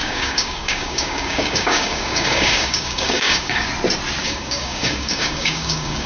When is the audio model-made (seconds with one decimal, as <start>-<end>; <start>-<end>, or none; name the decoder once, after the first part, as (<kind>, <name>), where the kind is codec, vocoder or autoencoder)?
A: 0.0-3.7 (codec, DAC); 4.2-6.1